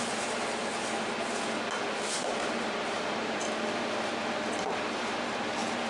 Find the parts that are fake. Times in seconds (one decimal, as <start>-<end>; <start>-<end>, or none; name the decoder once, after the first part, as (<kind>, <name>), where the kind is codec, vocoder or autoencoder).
0.0-0.7 (vocoder, BigVGAN v2); 2.0-3.4; 5.2-5.9